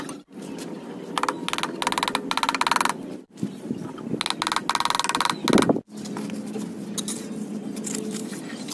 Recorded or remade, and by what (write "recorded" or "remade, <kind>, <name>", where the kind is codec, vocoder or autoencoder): recorded